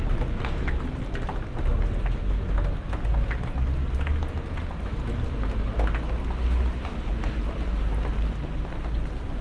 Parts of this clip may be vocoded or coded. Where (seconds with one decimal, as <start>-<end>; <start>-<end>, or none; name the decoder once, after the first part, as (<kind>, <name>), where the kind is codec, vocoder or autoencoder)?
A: none